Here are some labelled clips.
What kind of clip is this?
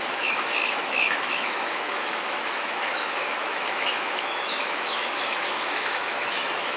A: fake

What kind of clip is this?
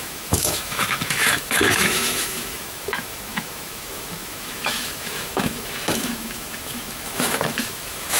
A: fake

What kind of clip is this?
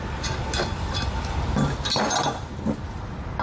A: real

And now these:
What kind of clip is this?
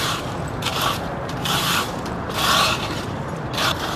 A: fake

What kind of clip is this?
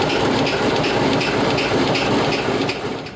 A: real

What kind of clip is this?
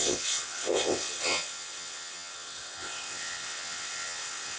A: fake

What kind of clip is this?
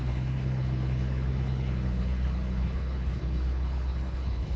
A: fake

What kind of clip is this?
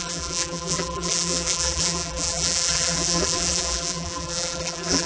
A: fake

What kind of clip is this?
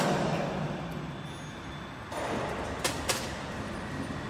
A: real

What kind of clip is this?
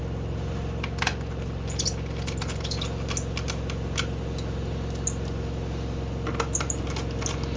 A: real